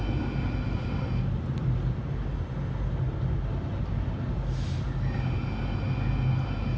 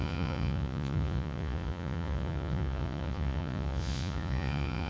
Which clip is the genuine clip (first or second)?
first